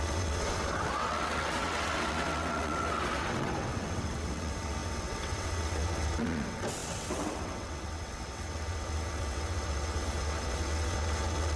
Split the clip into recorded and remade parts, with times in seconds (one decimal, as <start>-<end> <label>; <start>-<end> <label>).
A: 0.0-11.6 remade